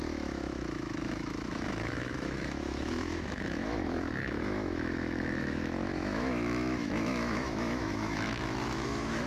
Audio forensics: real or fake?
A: fake